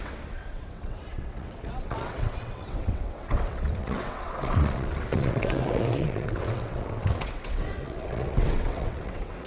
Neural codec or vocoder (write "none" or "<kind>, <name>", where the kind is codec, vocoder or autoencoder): vocoder, WaveNeXt